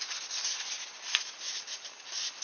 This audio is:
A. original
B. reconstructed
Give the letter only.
A